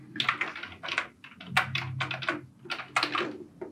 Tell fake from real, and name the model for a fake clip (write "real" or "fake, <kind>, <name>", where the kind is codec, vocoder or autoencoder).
real